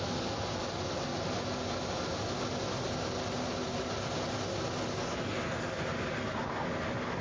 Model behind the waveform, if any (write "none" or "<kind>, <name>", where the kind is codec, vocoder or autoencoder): none